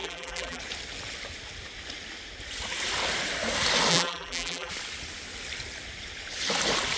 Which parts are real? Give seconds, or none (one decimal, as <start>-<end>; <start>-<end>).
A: 0.6-3.9; 4.7-7.0